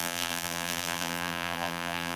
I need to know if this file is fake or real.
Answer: fake